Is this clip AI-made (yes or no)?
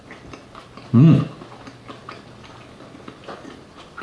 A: no